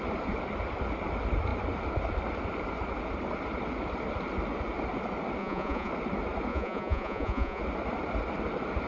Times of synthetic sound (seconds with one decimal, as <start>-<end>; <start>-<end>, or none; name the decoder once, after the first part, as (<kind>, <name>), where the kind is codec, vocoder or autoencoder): 5.4-5.9 (vocoder, Vocos); 6.5-7.6